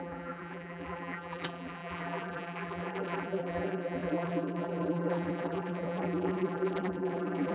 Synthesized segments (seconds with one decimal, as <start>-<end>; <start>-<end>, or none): 0.0-7.5